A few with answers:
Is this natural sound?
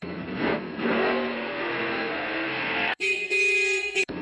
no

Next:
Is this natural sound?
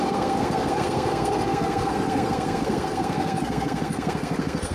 no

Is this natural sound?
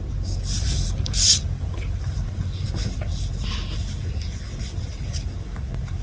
yes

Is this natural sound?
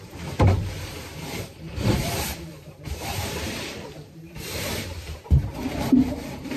no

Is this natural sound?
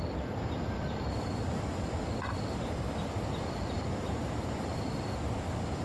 yes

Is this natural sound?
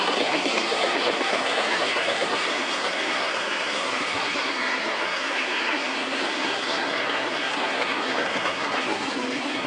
no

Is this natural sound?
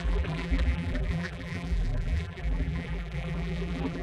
no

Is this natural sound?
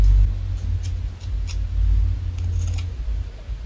yes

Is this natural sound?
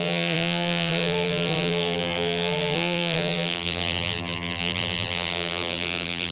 no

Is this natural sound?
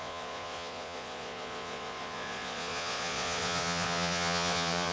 no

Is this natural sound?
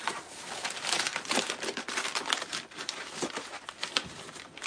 yes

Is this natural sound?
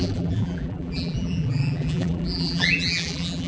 no